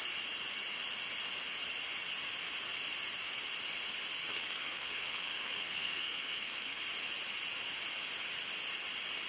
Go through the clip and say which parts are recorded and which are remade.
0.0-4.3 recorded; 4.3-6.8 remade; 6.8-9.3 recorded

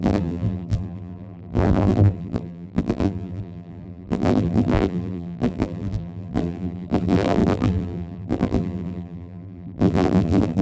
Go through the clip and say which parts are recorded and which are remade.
0.0-10.6 remade